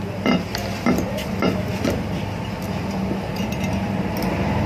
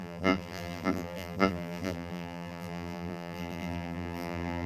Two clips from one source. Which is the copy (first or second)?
second